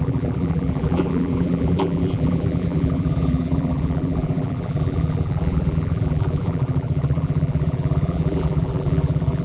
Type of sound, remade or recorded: remade